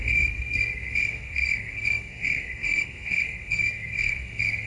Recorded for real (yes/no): no